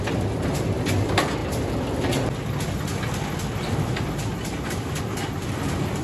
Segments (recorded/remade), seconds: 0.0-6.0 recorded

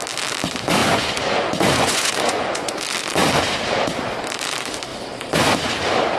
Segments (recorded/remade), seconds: 0.0-0.8 recorded; 0.8-2.8 remade; 2.8-6.2 recorded

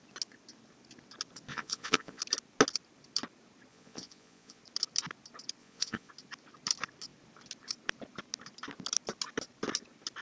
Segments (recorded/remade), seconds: 0.0-1.5 recorded; 1.5-2.2 remade; 2.2-3.7 recorded; 3.7-4.6 remade; 4.6-5.6 recorded; 5.6-6.1 remade; 6.1-10.2 recorded